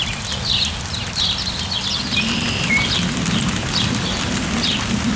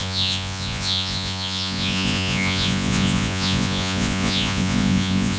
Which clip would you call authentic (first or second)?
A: first